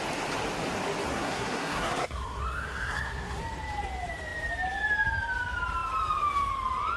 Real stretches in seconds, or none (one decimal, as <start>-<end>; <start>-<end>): 0.0-1.1; 3.4-7.0